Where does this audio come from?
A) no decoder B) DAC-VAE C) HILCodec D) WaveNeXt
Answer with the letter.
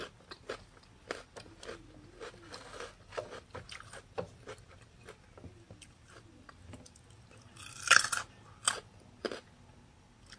A